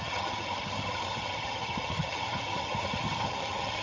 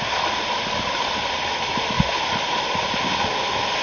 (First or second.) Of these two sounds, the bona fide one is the second